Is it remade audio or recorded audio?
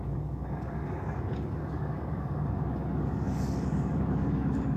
remade